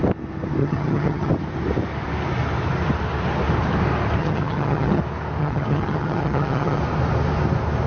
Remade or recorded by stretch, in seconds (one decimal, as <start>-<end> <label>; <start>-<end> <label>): 0.0-0.6 recorded; 0.6-1.3 remade; 1.3-4.2 recorded; 4.2-5.0 remade; 5.0-5.4 recorded; 5.4-6.8 remade; 6.8-7.9 recorded